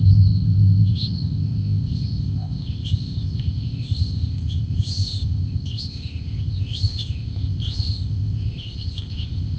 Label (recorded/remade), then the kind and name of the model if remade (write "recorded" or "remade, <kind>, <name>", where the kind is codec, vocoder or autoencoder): remade, codec, ZipCodec